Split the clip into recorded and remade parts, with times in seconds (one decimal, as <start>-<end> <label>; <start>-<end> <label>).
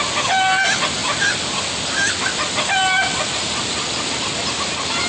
0.0-5.1 recorded